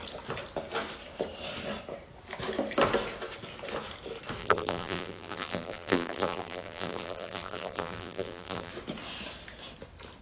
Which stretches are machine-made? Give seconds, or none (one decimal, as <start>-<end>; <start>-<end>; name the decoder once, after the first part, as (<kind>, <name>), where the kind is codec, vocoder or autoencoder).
4.4-8.7 (vocoder, BigVGAN v2)